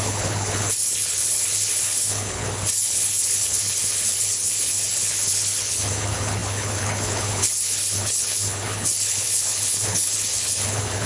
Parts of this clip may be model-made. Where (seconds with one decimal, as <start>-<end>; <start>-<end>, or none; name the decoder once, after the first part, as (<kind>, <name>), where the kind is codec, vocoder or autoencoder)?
0.0-11.1 (codec, HILCodec)